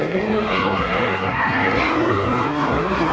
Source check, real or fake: fake